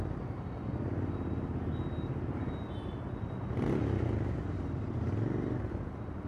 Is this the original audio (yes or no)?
yes